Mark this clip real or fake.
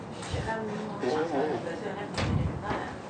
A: real